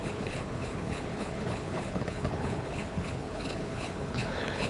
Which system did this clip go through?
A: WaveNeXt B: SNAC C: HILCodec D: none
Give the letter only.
C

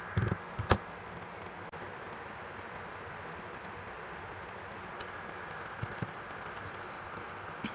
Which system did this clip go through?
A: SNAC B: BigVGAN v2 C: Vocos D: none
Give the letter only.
D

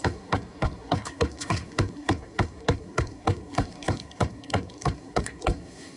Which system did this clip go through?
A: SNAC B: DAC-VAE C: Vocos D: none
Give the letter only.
A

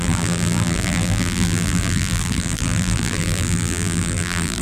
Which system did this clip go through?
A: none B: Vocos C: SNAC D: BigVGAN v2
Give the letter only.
D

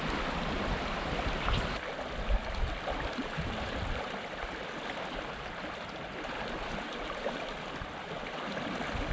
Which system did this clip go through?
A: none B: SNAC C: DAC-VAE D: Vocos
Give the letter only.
A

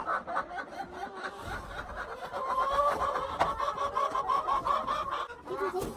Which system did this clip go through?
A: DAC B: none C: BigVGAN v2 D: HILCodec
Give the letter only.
B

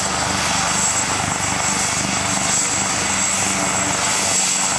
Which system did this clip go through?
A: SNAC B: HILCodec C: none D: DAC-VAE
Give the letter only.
C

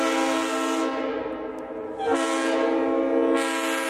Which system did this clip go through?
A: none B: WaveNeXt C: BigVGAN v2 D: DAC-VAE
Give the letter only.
A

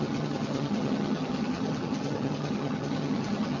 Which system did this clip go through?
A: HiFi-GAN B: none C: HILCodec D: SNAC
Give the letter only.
A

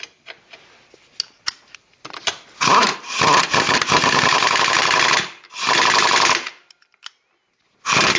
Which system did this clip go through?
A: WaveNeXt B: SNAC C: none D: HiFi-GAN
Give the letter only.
C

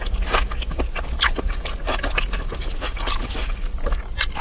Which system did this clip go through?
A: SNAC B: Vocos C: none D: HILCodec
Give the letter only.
C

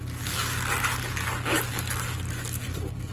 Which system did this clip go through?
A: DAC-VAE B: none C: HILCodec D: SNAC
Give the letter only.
B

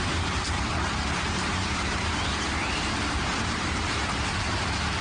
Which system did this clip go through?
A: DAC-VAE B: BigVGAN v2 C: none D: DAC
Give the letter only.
B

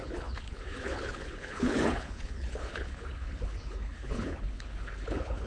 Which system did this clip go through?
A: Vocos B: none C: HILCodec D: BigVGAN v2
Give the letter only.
C